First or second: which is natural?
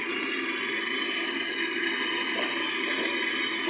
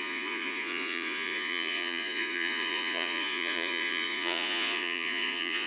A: first